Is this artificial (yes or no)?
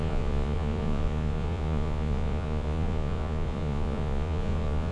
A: yes